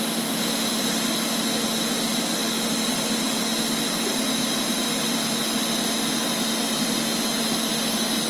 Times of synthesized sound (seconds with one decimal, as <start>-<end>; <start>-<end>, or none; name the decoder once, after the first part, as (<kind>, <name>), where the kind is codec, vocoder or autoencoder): none